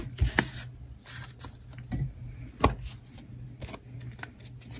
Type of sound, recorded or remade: recorded